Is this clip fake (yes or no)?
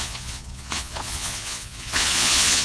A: yes